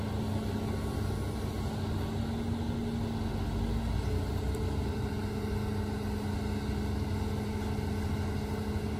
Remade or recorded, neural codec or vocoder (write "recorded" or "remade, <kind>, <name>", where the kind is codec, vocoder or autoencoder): recorded